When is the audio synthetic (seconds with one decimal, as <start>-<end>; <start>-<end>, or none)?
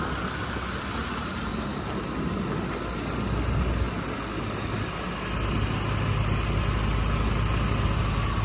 none